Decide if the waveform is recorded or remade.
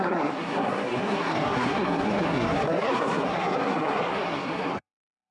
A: remade